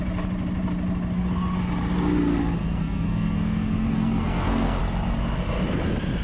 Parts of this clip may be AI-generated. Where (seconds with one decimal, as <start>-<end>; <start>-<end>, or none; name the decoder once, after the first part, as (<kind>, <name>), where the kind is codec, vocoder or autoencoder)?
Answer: 2.6-4.8 (codec, SNAC)